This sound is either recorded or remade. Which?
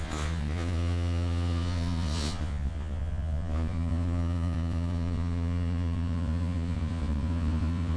remade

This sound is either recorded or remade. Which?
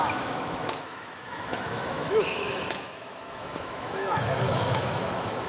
remade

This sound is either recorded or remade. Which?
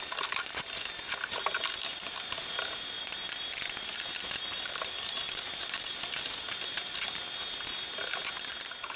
recorded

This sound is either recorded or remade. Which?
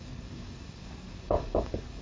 remade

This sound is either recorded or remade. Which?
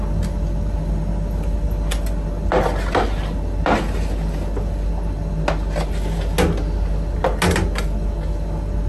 recorded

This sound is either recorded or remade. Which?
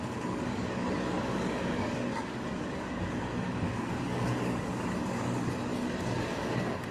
remade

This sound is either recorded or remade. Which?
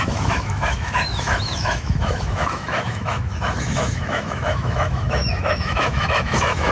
remade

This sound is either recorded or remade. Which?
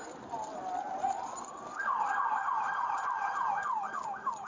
recorded